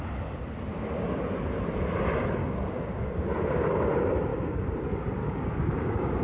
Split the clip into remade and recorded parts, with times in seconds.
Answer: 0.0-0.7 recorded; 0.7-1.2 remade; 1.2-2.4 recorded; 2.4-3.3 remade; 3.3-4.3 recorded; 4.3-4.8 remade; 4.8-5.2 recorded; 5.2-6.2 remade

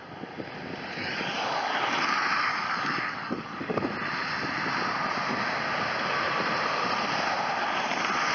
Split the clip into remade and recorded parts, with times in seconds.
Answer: 0.0-1.0 recorded; 1.0-2.0 remade; 2.0-2.5 recorded; 2.5-3.8 remade; 3.8-8.3 recorded

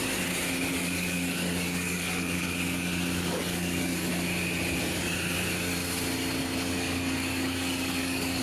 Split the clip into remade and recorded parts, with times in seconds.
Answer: 0.0-0.7 recorded; 0.7-4.1 remade; 4.1-6.4 recorded; 6.4-8.4 remade

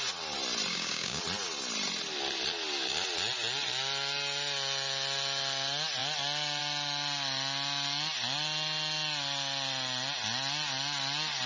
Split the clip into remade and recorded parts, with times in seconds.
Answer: 0.0-0.7 recorded; 0.7-1.2 remade; 1.2-11.5 recorded

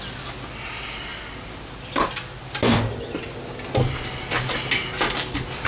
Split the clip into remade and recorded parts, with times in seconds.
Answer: 0.0-5.7 recorded

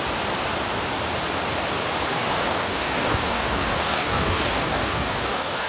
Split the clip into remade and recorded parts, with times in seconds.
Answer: 0.0-2.1 recorded; 2.1-5.7 remade

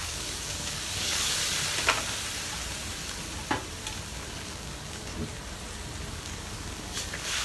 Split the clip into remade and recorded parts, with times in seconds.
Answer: 0.0-1.4 remade; 1.4-4.4 recorded; 4.4-5.1 remade; 5.1-6.1 recorded; 6.1-7.4 remade